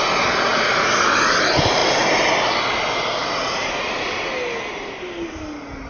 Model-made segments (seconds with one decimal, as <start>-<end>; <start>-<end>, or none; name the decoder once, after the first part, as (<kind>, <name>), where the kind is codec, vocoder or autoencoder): none